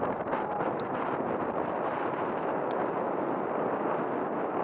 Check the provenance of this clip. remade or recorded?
recorded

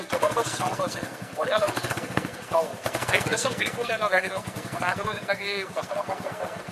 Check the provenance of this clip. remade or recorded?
remade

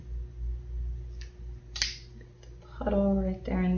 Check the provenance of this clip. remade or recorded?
recorded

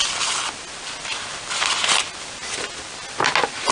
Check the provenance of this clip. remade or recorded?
recorded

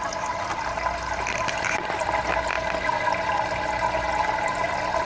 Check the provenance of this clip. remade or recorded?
recorded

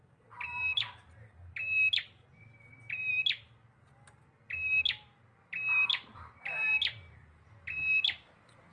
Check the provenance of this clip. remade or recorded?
recorded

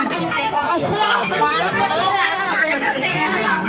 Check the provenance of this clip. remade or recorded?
remade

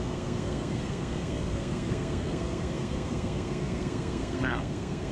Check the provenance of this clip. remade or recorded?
remade